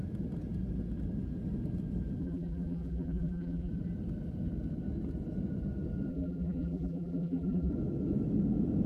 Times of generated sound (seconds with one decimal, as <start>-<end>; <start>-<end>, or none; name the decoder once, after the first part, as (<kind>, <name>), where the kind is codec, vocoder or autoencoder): 2.2-3.7 (vocoder, BigVGAN v2); 6.1-7.7